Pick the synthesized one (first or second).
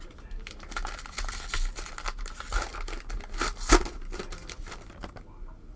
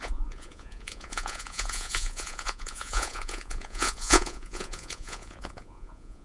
second